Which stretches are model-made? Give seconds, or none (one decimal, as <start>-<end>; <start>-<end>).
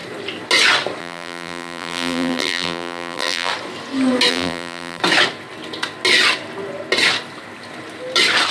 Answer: 1.0-3.5; 4.3-5.0